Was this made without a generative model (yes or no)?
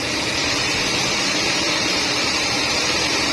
no